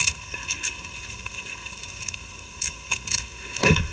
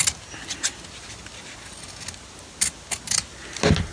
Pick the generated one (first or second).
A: first